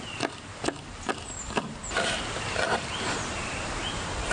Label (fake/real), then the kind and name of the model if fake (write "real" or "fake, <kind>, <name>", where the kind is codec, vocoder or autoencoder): real